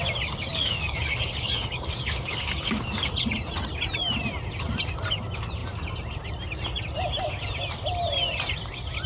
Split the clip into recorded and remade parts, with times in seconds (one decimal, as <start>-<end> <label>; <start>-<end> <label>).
0.0-0.5 recorded; 0.5-3.1 remade; 3.1-9.1 recorded

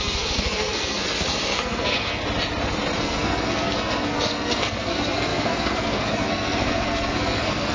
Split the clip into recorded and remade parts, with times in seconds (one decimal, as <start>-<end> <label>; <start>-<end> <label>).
0.0-2.2 remade; 2.2-3.0 recorded; 3.0-7.7 remade

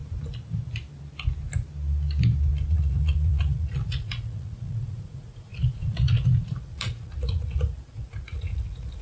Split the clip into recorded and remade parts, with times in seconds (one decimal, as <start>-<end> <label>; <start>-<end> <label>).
0.0-2.7 recorded; 2.7-9.0 remade

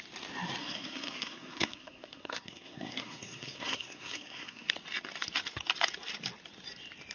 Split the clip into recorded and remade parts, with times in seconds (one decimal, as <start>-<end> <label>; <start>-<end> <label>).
0.0-0.6 recorded; 0.6-4.7 remade; 4.7-7.1 recorded